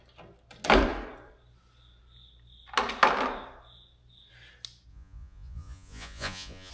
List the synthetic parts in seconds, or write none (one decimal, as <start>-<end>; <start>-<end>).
4.9-6.7